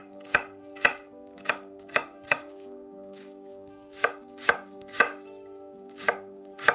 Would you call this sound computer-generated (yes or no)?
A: yes